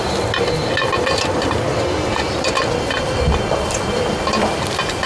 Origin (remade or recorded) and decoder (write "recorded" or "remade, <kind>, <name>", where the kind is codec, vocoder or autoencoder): recorded